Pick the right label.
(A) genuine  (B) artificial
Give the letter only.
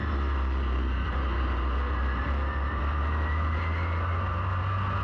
A